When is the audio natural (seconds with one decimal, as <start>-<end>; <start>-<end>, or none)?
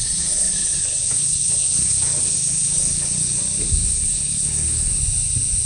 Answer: 3.4-3.8; 4.9-5.7